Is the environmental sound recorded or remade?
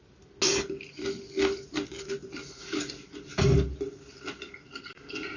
recorded